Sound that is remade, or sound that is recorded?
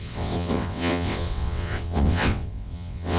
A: remade